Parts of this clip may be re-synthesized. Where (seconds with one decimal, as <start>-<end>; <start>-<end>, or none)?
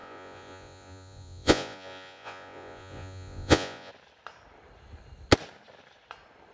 0.0-3.9